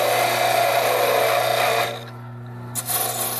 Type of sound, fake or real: real